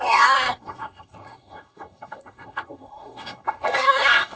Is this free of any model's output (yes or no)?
no